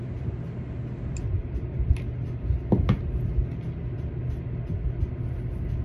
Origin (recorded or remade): recorded